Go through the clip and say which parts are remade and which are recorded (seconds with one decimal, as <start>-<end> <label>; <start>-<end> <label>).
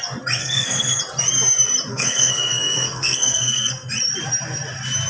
0.0-0.4 recorded; 0.4-1.0 remade; 1.0-1.9 recorded; 1.9-3.9 remade; 3.9-5.1 recorded